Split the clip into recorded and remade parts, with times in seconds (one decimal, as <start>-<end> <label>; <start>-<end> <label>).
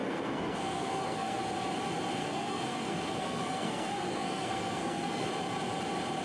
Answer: 0.0-1.4 remade; 1.4-2.2 recorded; 2.2-5.3 remade; 5.3-6.2 recorded